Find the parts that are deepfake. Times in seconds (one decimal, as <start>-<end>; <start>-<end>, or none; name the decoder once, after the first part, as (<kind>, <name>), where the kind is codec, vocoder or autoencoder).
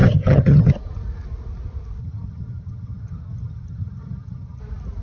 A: 0.0-0.7 (vocoder, HiFi-GAN); 2.0-4.6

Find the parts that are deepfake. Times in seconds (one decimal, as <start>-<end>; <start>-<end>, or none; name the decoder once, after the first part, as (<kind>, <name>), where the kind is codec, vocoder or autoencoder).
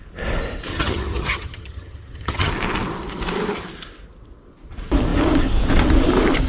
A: 0.7-2.5 (vocoder, HiFi-GAN)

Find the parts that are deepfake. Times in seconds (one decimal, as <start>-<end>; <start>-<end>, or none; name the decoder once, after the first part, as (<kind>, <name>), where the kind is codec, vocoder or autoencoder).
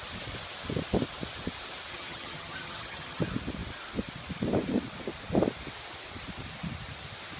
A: 1.9-3.2 (vocoder, HiFi-GAN)